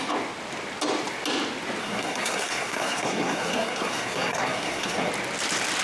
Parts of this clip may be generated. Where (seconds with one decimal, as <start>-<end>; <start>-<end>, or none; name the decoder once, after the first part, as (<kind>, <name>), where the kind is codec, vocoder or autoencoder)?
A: 1.8-5.1 (codec, SNAC)